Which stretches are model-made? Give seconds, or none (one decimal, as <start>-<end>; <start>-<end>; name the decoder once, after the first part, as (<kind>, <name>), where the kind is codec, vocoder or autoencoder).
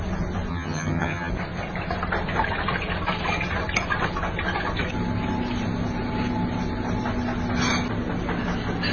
0.5-1.3 (vocoder, HiFi-GAN)